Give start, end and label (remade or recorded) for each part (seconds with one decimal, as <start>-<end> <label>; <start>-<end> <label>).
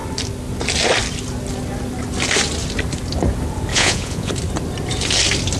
0.0-3.7 recorded; 3.7-4.3 remade; 4.3-5.6 recorded